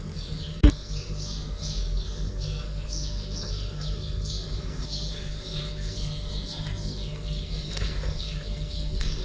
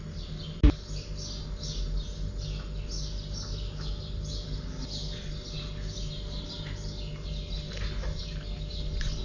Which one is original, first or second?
second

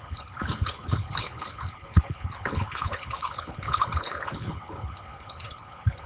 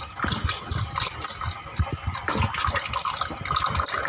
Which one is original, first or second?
second